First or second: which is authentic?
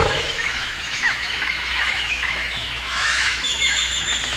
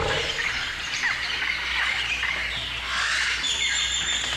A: second